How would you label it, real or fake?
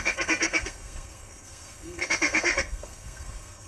fake